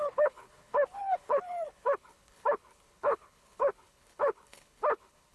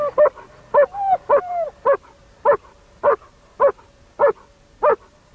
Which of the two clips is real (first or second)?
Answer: second